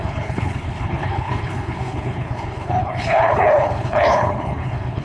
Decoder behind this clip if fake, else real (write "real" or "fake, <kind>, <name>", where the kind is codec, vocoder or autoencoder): fake, codec, HILCodec